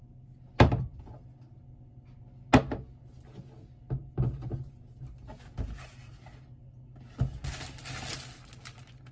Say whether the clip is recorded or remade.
recorded